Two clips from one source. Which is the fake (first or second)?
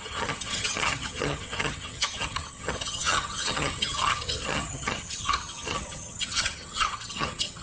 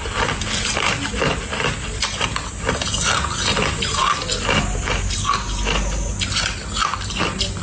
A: first